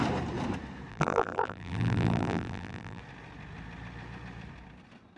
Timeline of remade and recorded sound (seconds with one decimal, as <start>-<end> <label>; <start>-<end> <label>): 0.0-0.9 recorded; 0.9-3.0 remade; 3.0-5.2 recorded